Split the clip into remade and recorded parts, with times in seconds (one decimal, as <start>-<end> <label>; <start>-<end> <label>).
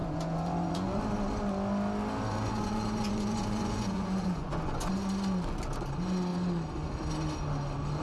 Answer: 0.0-1.0 remade; 1.0-2.3 recorded; 2.3-4.9 remade; 4.9-8.0 recorded